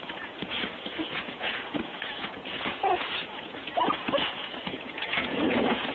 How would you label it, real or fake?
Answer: fake